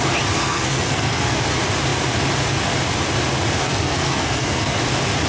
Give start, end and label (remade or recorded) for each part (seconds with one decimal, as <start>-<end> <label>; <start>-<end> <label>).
0.0-0.4 recorded; 0.4-1.4 remade; 1.4-3.6 recorded; 3.6-4.8 remade; 4.8-5.3 recorded